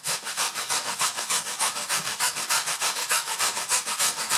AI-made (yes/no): yes